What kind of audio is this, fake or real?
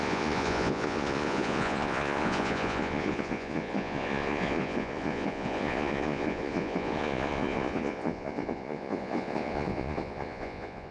fake